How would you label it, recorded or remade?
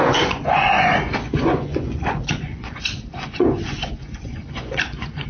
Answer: remade